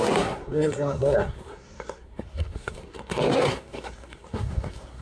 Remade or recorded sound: remade